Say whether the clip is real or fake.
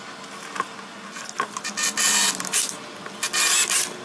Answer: real